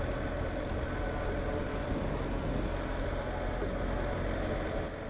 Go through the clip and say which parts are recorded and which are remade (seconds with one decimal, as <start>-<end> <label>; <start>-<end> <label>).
0.0-5.1 recorded